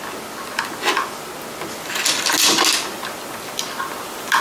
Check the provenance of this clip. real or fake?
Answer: real